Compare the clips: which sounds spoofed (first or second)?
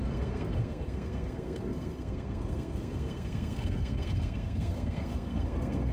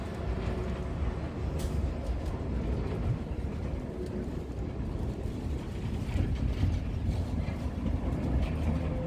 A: first